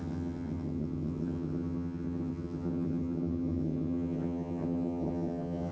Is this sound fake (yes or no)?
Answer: yes